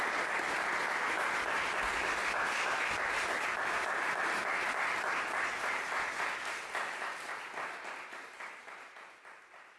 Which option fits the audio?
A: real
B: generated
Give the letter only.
A